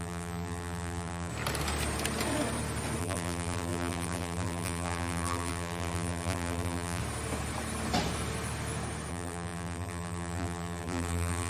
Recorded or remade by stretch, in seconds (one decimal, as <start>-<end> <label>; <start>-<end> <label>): 0.0-1.3 remade; 1.3-3.0 recorded; 3.0-7.0 remade; 7.0-9.1 recorded; 9.1-11.5 remade